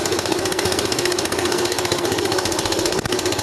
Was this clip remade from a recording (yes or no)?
yes